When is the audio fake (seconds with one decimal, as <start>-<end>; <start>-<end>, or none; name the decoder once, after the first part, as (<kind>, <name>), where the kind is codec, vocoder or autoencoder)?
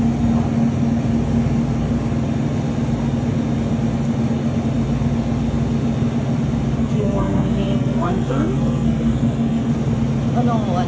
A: 6.8-9.7 (codec, SNAC)